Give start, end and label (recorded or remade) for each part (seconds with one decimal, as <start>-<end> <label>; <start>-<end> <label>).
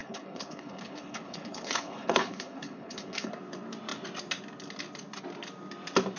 0.0-3.3 remade; 3.3-6.2 recorded